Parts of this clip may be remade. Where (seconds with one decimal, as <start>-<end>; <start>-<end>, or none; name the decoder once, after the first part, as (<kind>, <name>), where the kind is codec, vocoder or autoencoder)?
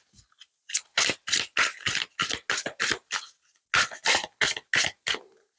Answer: none